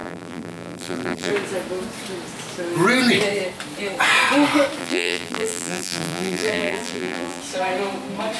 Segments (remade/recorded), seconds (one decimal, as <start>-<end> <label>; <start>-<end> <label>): 0.0-1.3 remade; 1.3-4.8 recorded; 4.8-7.4 remade; 7.4-8.4 recorded